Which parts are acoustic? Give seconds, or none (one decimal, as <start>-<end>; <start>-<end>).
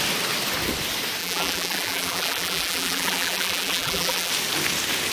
0.0-1.2; 4.3-5.1